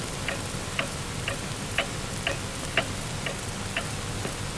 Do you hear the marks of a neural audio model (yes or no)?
no